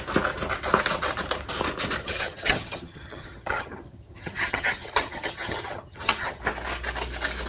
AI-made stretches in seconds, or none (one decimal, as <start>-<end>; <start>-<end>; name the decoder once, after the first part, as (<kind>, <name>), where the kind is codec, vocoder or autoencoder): 2.0-6.4 (vocoder, HiFi-GAN)